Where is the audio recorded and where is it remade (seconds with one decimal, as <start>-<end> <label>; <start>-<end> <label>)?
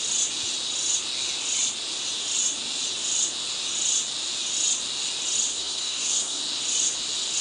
0.0-5.5 recorded; 5.5-6.4 remade; 6.4-7.4 recorded